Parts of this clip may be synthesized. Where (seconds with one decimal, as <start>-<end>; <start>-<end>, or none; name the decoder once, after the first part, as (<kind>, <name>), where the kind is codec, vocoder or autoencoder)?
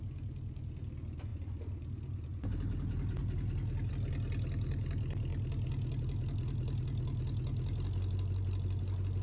none